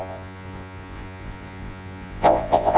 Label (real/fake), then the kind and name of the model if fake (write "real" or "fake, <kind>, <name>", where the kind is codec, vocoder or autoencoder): fake, vocoder, Vocos